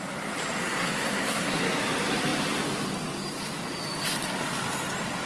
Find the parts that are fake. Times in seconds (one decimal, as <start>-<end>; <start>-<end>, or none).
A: 0.6-1.6

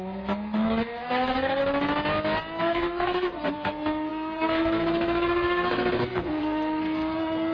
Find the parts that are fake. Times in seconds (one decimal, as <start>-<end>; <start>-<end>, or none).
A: 0.0-1.6; 2.6-7.5

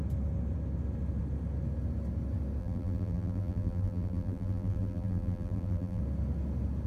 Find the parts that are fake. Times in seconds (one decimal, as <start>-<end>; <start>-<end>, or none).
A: 2.6-6.0